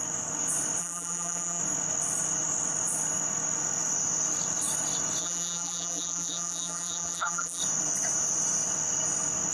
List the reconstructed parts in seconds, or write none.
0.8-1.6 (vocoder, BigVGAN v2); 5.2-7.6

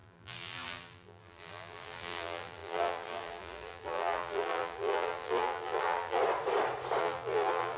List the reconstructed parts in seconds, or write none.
0.0-6.2 (vocoder, BigVGAN v2); 7.0-7.8